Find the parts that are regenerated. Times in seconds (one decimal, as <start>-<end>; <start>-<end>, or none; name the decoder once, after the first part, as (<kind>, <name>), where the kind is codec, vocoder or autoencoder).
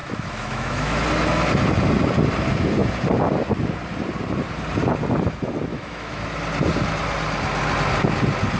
0.0-1.0 (autoencoder, DAC-VAE); 5.7-6.2